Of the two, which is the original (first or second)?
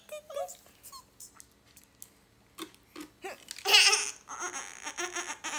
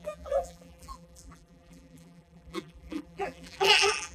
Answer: first